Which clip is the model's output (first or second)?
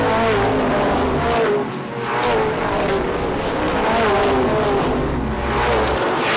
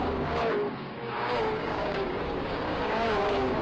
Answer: second